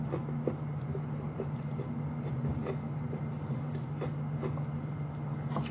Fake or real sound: real